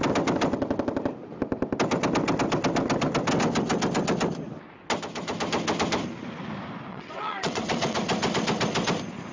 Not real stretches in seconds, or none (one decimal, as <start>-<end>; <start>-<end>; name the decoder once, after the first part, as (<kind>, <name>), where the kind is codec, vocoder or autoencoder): 6.9-8.0 (vocoder, WaveNeXt)